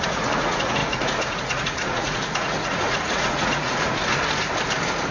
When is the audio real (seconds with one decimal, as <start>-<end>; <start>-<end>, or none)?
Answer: 4.0-5.1